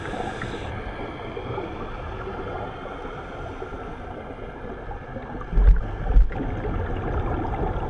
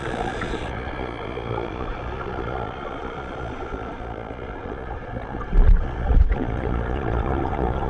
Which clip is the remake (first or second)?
second